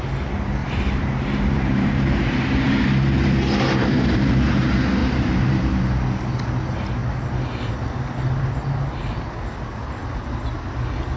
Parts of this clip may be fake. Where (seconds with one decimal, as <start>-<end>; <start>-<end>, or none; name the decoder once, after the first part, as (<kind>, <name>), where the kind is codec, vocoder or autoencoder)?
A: 0.6-4.6 (vocoder, BigVGAN v2); 5.0-5.8